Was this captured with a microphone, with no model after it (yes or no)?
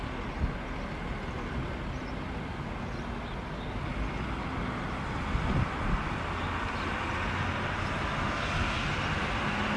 yes